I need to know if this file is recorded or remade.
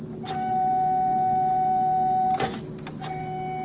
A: recorded